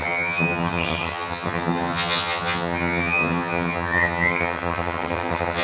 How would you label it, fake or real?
fake